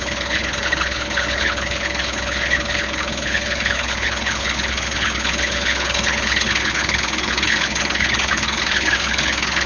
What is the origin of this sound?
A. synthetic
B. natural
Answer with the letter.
A